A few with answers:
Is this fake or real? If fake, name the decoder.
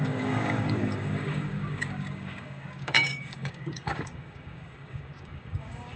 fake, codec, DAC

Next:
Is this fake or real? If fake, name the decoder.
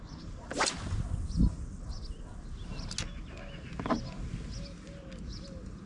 real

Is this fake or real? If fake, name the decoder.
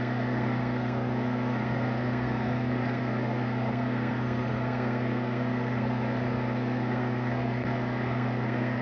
fake, codec, SNAC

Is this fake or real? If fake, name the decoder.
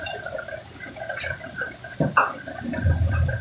real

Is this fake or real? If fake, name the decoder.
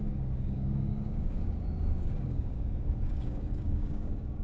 fake, codec, DAC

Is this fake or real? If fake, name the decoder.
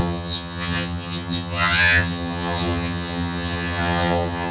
fake, vocoder, HiFi-GAN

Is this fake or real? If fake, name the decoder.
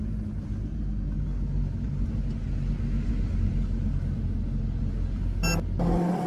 real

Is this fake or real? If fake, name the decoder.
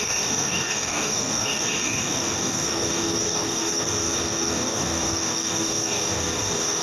fake, codec, DAC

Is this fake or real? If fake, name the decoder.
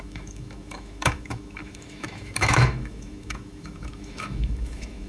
fake, autoencoder, DAC-VAE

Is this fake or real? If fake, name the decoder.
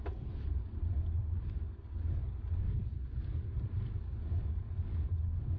real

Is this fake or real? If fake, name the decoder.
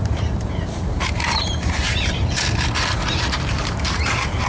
fake, vocoder, BigVGAN v2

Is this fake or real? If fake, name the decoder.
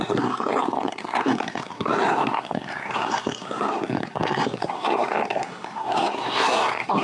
fake, codec, SNAC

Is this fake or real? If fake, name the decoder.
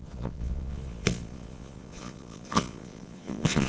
fake, vocoder, Vocos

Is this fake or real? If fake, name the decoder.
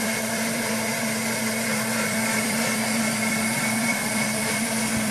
fake, vocoder, BigVGAN v2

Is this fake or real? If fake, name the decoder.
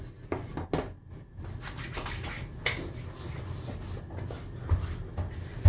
real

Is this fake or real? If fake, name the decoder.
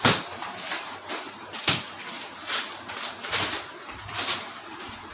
fake, vocoder, BigVGAN v2